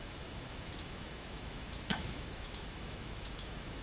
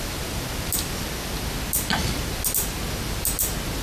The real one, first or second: second